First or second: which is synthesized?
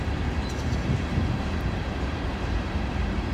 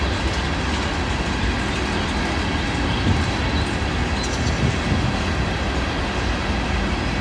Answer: first